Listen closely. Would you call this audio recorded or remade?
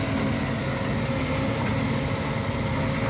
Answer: recorded